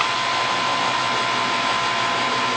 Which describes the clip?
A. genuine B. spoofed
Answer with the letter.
A